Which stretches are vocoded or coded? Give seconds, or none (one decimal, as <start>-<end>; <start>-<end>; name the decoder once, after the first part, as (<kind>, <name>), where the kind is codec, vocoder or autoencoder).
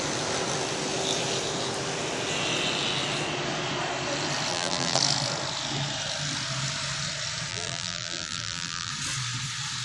4.5-5.0 (vocoder, BigVGAN v2); 7.5-8.9